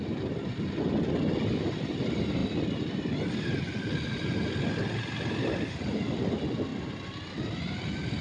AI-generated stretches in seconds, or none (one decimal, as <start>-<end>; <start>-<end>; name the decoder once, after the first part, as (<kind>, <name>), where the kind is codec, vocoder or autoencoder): none